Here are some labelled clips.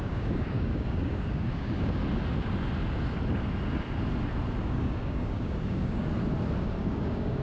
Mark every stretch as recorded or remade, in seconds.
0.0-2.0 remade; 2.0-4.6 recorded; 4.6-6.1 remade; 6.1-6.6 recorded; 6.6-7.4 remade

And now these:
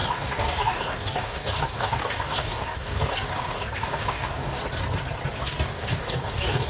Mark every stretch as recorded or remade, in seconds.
0.0-4.6 remade; 4.6-5.4 recorded; 5.4-6.7 remade